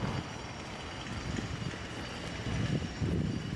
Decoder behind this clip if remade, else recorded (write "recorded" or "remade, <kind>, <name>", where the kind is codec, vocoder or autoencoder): recorded